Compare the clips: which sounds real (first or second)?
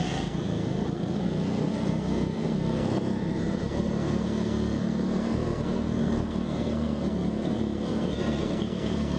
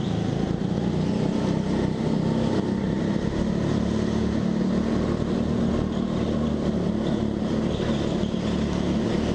second